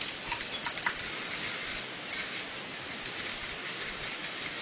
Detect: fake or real fake